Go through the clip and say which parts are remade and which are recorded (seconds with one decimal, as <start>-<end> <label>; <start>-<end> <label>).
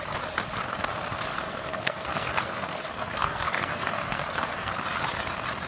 0.0-1.3 recorded; 1.3-4.7 remade; 4.7-5.7 recorded